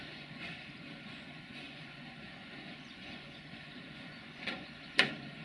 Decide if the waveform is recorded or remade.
remade